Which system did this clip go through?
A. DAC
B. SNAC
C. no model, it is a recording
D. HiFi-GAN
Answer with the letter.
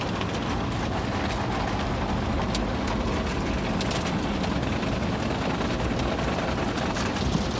C